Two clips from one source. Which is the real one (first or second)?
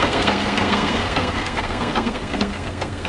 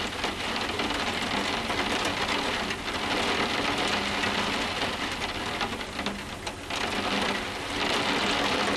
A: second